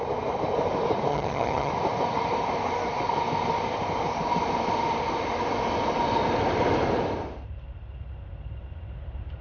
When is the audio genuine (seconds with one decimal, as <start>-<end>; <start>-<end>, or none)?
0.0-1.1; 1.7-9.4